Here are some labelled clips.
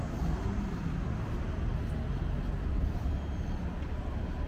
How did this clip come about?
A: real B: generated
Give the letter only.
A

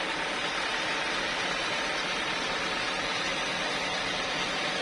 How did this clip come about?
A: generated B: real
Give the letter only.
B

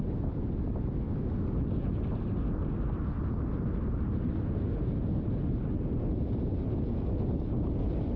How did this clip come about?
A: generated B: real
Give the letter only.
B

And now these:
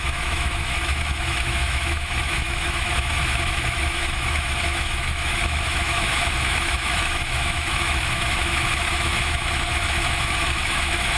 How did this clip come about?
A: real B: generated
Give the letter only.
B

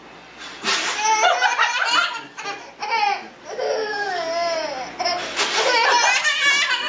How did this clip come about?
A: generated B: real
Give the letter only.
B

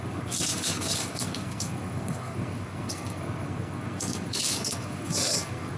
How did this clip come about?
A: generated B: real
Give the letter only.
A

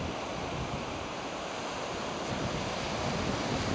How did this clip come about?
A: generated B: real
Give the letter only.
B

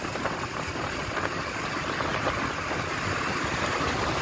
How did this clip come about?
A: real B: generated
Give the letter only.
A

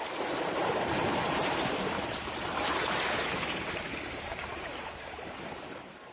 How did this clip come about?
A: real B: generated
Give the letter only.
B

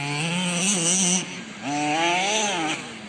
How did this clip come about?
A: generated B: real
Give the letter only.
B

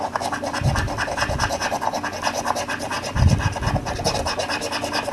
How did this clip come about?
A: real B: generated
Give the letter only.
A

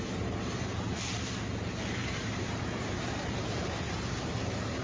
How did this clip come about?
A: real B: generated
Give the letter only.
B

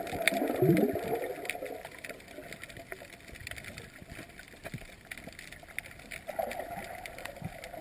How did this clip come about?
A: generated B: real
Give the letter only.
B